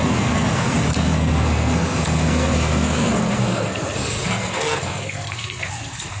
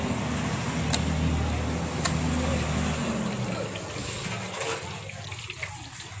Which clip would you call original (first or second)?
second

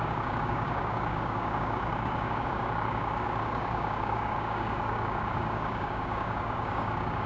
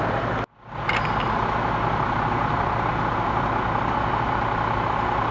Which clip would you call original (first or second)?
second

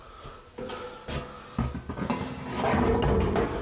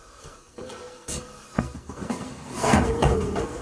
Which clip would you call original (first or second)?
first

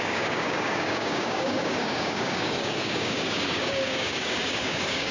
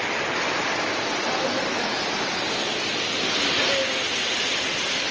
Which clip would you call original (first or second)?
second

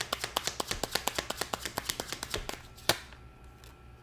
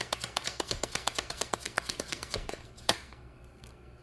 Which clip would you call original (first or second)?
first